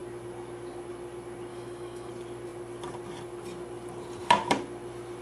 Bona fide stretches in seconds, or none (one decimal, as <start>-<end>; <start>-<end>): 0.0-1.5; 2.1-5.2